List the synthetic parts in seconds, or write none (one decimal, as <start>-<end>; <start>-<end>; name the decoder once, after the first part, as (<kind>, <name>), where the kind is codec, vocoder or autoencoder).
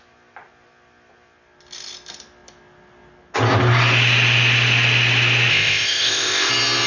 5.5-6.5 (codec, ZipCodec)